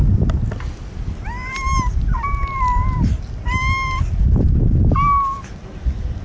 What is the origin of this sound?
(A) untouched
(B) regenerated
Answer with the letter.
A